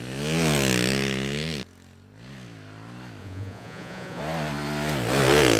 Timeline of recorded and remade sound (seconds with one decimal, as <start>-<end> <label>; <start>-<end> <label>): 0.0-3.2 recorded; 3.2-4.2 remade; 4.2-5.6 recorded